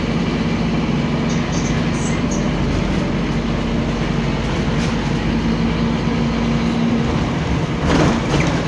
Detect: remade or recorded recorded